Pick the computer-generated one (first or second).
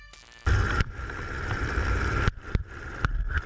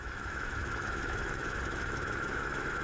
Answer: second